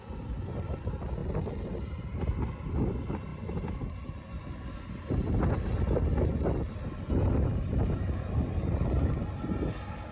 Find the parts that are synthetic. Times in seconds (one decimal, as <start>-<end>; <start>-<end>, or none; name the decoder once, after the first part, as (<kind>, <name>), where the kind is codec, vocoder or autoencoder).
none